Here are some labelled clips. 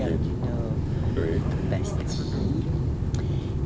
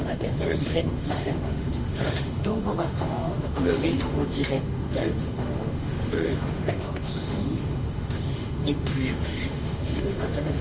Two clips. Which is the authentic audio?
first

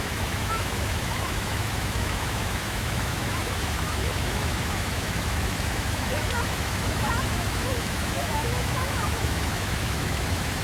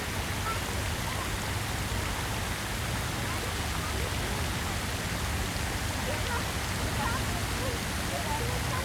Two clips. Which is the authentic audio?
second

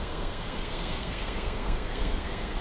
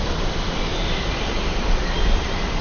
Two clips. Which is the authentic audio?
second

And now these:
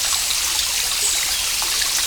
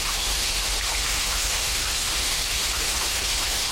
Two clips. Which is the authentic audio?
first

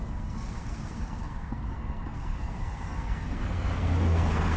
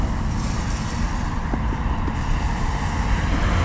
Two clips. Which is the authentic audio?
second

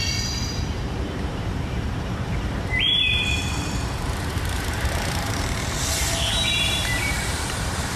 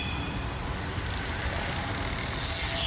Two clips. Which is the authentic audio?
second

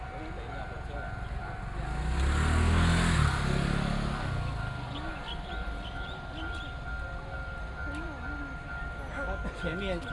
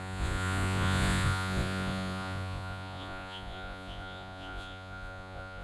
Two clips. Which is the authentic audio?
first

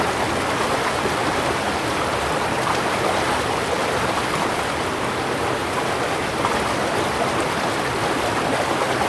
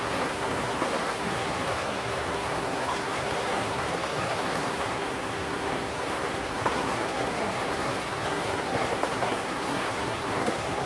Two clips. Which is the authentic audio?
first